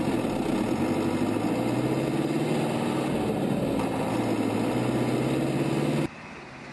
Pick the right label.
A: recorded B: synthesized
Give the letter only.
A